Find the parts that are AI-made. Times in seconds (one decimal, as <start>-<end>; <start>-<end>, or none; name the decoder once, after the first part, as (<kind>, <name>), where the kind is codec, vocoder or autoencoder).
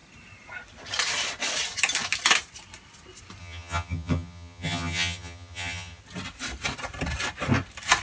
3.4-6.0 (vocoder, HiFi-GAN)